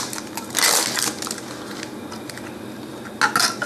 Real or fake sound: real